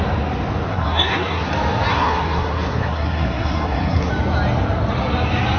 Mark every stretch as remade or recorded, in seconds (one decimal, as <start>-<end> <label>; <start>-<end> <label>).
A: 0.0-0.7 recorded; 0.7-1.5 remade; 1.5-1.9 recorded; 1.9-4.1 remade; 4.1-5.6 recorded